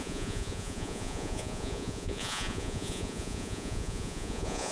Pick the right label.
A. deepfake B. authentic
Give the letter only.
A